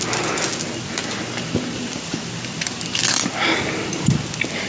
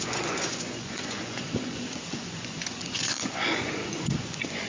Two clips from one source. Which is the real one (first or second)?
first